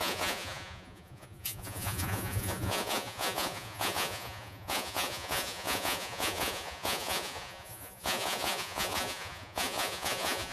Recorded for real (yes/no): no